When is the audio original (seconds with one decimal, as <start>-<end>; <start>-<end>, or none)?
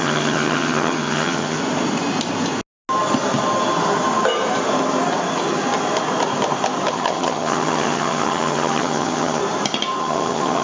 1.6-6.9; 9.4-10.0